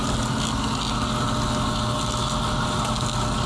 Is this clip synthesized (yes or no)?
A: no